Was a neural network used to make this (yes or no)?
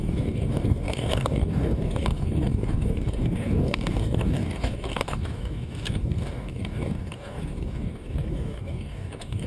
yes